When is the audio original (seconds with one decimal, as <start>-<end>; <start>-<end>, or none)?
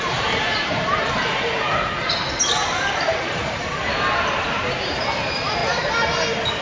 5.6-6.6